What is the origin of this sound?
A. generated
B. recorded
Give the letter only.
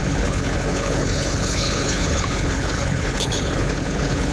A